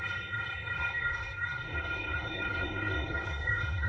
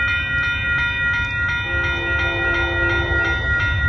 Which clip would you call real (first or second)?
second